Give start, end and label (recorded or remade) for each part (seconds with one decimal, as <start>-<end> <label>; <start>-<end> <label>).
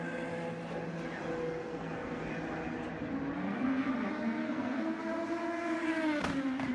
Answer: 0.0-1.4 recorded; 1.4-2.3 remade; 2.3-3.4 recorded; 3.4-3.9 remade; 3.9-4.4 recorded; 4.4-5.0 remade; 5.0-6.7 recorded